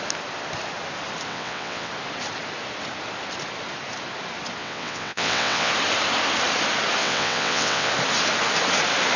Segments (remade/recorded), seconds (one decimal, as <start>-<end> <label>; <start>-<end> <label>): 0.0-1.3 recorded; 1.3-1.9 remade; 1.9-4.6 recorded; 4.6-5.7 remade; 5.7-7.0 recorded; 7.0-7.9 remade; 7.9-9.2 recorded